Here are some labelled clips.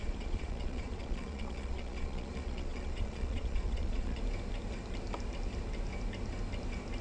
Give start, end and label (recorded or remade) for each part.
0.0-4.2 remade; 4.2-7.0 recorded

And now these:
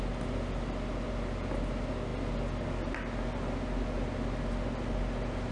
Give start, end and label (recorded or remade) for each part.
0.0-5.5 recorded

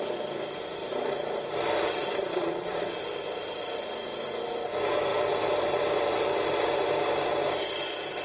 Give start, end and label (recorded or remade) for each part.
0.0-2.3 recorded; 2.3-2.8 remade; 2.8-8.2 recorded

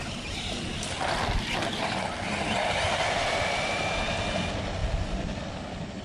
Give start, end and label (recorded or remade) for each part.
0.0-6.0 recorded